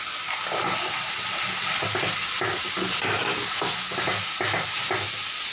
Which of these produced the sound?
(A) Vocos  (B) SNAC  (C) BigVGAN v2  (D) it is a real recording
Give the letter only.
D